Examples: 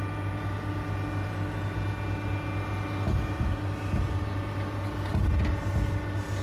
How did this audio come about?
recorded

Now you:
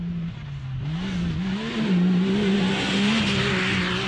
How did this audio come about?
recorded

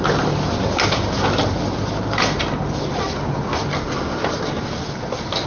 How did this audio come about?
recorded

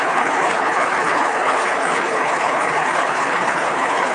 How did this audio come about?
remade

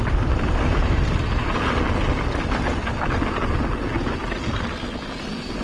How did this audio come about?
recorded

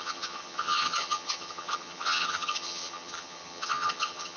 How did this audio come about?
remade